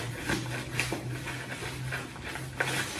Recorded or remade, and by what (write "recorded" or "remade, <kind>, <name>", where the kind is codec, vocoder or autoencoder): recorded